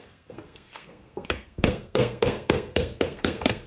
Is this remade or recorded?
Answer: remade